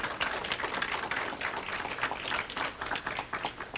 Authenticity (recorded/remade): recorded